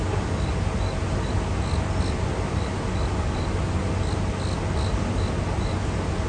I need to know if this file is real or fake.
real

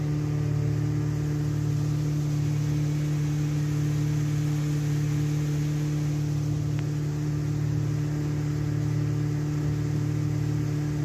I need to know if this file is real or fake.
real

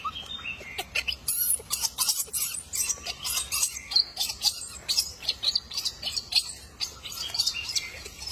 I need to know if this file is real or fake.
fake